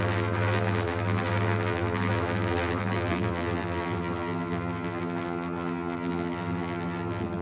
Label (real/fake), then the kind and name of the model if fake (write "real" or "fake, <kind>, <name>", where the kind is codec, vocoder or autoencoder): fake, vocoder, BigVGAN v2